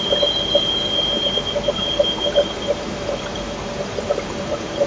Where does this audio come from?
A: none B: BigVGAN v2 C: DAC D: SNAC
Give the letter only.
B